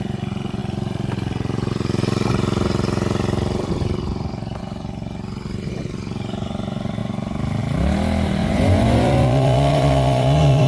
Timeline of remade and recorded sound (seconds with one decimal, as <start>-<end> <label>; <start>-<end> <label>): 0.0-8.4 recorded; 8.4-10.7 remade